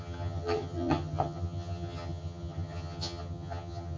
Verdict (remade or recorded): remade